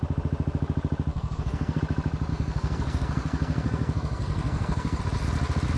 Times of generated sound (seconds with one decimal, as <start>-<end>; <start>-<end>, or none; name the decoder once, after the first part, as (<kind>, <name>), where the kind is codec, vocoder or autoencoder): 1.1-1.8 (codec, SNAC); 2.3-5.0